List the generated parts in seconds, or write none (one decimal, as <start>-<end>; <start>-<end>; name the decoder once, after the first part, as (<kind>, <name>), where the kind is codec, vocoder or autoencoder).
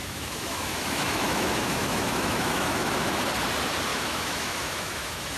0.0-3.2 (autoencoder, DAC-VAE); 3.9-5.4